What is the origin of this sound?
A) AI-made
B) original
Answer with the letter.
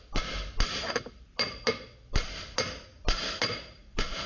B